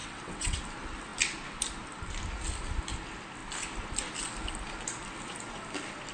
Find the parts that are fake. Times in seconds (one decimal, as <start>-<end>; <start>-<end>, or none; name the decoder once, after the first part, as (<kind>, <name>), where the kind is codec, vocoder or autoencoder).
0.0-0.6 (vocoder, WaveNeXt)